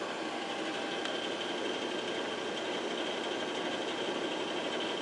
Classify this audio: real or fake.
real